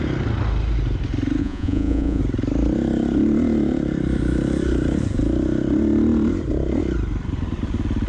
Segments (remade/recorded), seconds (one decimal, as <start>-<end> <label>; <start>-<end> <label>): 0.0-1.4 recorded; 1.4-2.2 remade; 2.2-8.1 recorded